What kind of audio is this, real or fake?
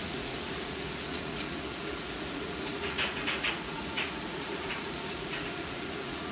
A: fake